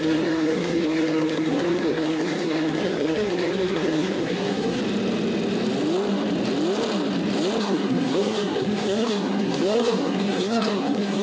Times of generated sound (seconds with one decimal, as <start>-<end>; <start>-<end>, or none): 0.0-4.8; 7.6-11.2

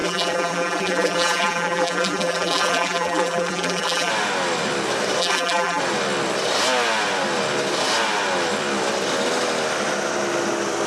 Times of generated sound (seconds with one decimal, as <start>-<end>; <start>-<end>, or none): 0.0-4.1; 5.2-5.8

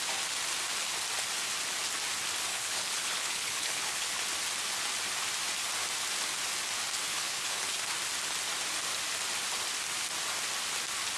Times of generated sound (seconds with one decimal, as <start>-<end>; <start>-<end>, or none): 2.5-4.2; 7.1-7.8

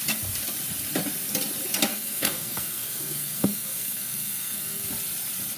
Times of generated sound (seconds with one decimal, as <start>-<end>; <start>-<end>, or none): 1.9-4.9

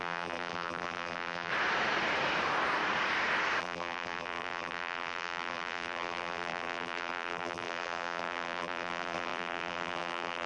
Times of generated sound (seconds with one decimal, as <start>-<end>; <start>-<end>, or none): 0.0-1.5; 3.6-10.5

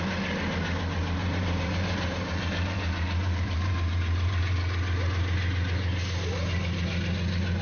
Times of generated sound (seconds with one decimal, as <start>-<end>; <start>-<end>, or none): 1.0-4.6

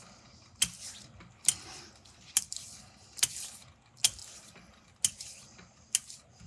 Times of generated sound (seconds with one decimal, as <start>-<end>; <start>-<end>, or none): none

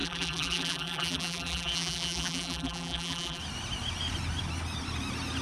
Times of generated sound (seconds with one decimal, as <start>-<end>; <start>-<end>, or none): 0.0-3.4